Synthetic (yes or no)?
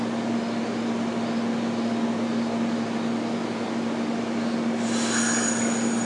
no